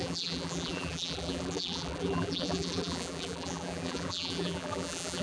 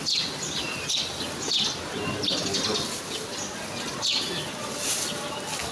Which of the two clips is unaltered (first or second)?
second